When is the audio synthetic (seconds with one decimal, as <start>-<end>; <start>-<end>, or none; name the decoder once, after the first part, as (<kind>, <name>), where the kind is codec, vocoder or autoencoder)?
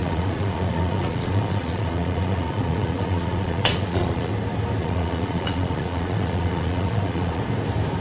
0.0-4.3 (vocoder, Vocos); 4.8-7.4